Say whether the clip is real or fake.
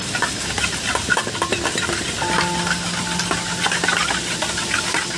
real